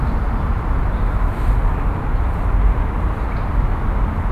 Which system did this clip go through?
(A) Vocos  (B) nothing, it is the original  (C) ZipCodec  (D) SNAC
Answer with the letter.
B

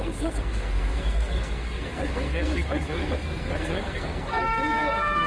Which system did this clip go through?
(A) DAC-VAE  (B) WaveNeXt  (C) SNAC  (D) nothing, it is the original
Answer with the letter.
C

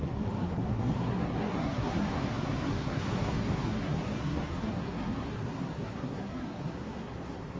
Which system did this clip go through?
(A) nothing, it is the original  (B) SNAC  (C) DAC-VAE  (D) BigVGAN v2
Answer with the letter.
B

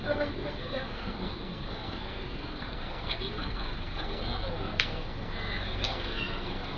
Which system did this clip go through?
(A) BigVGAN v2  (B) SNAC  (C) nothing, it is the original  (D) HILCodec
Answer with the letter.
B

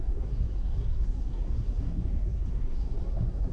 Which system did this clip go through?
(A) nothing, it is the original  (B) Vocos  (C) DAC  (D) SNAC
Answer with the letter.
D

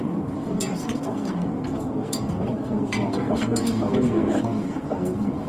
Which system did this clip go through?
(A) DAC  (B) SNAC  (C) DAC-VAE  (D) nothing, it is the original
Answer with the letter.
B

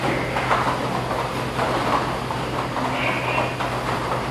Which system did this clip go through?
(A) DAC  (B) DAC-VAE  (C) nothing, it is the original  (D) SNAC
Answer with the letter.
C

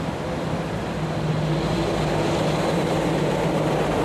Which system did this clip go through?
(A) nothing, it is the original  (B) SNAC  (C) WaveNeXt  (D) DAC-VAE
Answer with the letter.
A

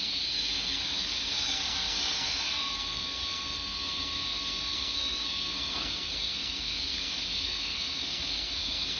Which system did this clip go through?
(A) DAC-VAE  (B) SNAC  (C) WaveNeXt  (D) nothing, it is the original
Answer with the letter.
B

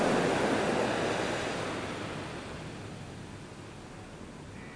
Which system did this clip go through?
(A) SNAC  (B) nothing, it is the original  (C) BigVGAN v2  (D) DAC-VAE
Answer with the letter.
B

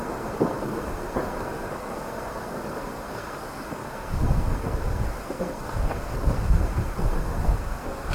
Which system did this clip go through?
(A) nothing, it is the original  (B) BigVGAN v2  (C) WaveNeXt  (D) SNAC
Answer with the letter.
D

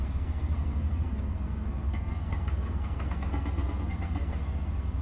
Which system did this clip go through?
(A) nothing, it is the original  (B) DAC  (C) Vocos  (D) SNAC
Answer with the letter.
D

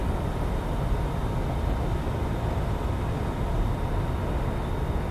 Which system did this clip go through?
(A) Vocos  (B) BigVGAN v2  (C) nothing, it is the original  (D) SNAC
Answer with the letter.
C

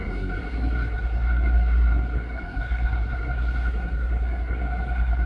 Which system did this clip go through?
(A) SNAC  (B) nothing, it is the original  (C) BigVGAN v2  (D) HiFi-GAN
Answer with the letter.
A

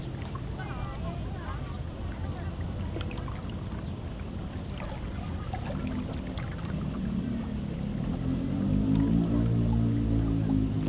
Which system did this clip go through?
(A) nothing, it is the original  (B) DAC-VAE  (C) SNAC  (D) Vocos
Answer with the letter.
A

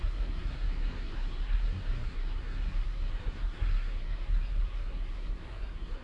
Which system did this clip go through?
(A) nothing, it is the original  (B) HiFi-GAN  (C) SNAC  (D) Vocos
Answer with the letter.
C